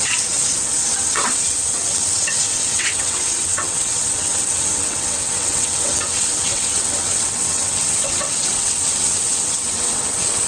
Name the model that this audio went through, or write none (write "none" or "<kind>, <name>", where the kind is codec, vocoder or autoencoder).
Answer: vocoder, WaveNeXt